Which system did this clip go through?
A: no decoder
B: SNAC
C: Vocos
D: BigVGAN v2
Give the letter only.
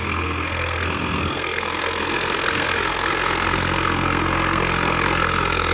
B